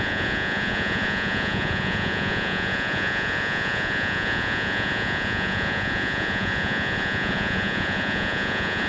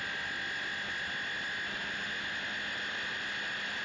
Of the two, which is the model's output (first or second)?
first